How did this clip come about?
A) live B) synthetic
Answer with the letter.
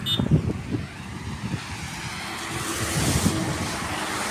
A